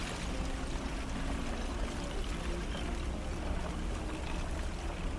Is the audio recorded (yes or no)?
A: yes